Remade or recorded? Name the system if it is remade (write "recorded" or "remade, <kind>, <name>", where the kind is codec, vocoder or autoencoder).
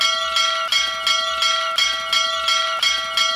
recorded